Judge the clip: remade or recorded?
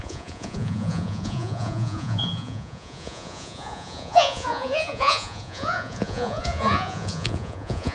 remade